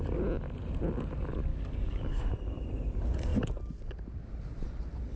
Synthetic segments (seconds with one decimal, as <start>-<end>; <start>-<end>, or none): 1.5-2.2